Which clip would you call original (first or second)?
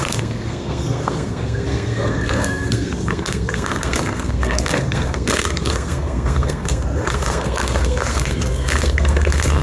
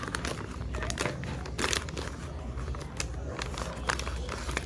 second